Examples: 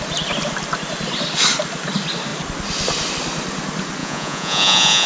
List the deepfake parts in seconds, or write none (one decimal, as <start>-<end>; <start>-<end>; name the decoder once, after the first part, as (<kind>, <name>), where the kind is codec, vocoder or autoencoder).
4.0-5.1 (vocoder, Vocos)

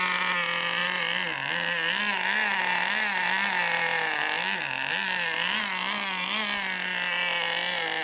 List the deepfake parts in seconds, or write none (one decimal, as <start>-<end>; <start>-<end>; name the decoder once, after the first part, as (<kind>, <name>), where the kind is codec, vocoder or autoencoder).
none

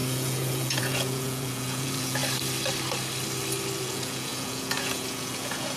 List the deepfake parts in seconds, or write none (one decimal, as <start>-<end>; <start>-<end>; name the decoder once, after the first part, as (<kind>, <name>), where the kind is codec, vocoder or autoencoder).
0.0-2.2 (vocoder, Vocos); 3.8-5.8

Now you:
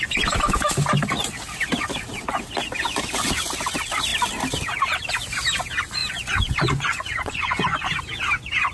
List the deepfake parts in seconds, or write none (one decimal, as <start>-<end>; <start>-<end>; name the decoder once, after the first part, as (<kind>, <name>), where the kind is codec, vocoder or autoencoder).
6.0-7.8 (vocoder, Vocos)

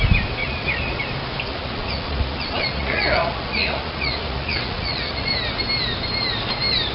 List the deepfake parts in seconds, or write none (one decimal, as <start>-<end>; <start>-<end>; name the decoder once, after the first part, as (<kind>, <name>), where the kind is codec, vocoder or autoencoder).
0.4-1.0 (vocoder, Vocos); 1.5-5.3